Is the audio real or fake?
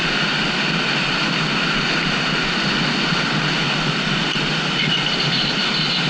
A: real